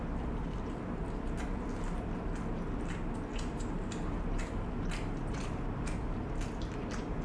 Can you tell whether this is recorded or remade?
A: recorded